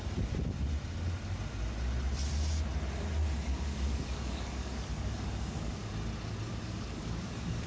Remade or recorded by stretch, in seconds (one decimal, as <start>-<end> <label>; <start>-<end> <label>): 0.0-3.5 recorded; 3.5-5.9 remade; 5.9-6.5 recorded; 6.5-7.7 remade